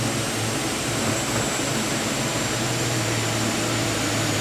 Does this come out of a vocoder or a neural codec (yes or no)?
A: yes